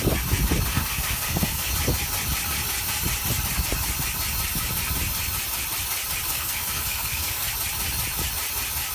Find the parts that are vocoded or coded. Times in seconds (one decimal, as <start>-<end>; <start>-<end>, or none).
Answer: 0.7-1.7; 6.3-7.5